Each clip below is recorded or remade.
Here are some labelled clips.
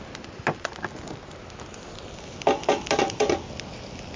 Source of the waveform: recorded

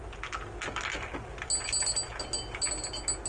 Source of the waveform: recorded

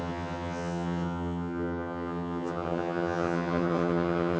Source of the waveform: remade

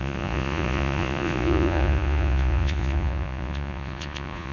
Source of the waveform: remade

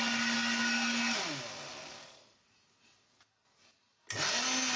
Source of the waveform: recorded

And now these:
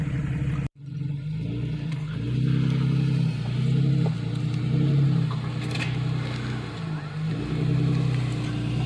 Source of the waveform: recorded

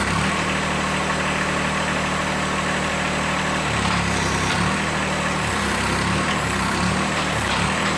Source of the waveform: remade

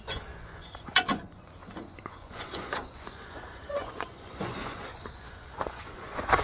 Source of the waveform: remade